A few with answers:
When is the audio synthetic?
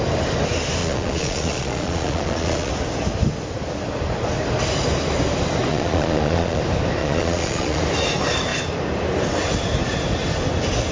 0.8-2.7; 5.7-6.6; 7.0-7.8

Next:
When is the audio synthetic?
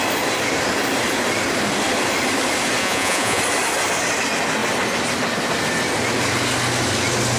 2.8-3.4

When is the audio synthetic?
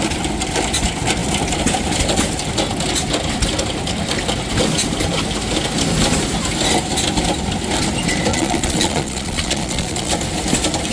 8.3-10.1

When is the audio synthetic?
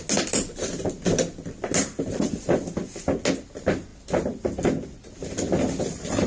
none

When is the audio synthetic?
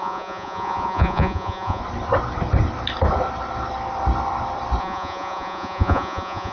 0.0-1.8; 4.8-6.5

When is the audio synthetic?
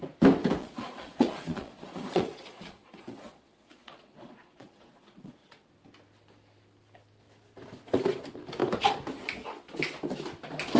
0.6-5.7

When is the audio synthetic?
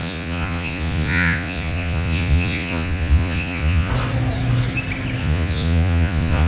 0.0-3.9; 5.2-6.5